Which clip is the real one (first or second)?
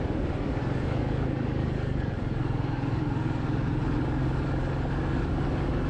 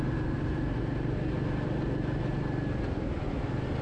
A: second